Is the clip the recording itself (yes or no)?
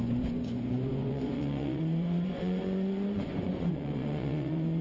no